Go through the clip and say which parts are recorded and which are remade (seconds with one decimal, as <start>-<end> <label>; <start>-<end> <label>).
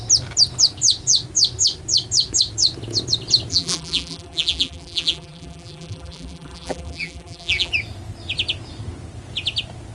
0.0-3.5 recorded; 3.5-7.7 remade; 7.7-9.9 recorded